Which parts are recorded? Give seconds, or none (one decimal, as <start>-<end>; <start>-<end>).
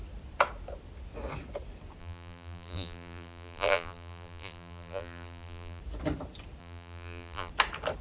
0.0-2.0; 5.8-6.6; 7.5-8.0